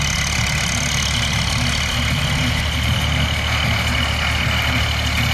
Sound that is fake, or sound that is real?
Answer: real